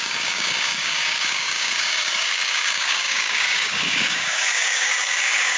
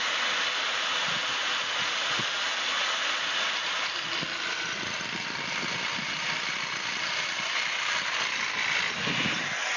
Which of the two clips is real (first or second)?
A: second